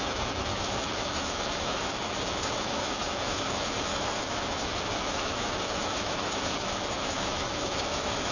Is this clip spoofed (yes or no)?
yes